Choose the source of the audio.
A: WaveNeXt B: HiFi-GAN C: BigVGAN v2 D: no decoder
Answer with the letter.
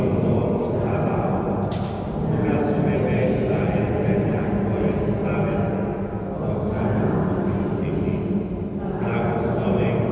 D